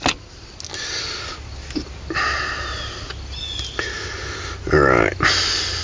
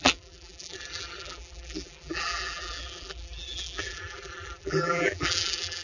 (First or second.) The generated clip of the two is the second